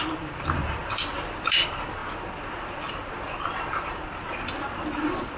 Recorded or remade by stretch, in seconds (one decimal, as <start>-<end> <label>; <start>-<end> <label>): 0.0-0.8 remade; 0.8-1.5 recorded; 1.5-2.0 remade; 2.0-5.4 recorded